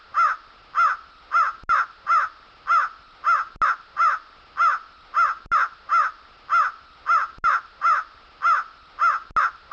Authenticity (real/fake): real